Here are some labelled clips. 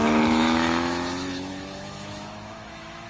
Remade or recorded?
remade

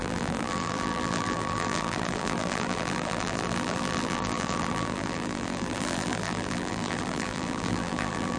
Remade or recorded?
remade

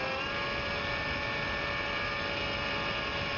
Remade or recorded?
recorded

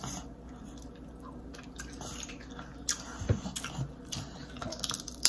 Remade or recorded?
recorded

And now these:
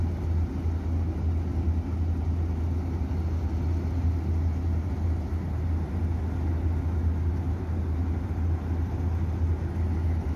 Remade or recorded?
recorded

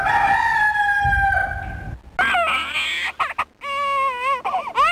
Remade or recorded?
recorded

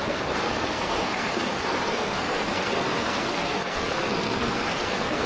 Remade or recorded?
remade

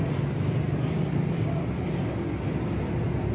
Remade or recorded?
recorded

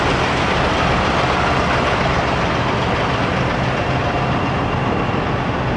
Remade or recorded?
recorded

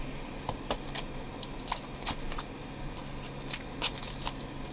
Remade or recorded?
recorded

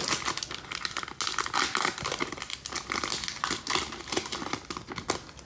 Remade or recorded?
recorded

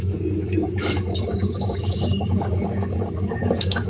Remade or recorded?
remade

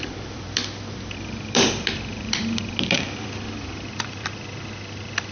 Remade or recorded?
remade